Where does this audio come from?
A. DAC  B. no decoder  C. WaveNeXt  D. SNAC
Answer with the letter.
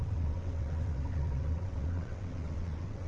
C